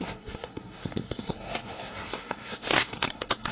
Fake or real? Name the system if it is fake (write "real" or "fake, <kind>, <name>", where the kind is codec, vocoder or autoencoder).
fake, codec, SNAC